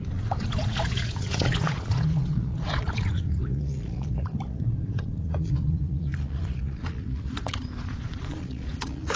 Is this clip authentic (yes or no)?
no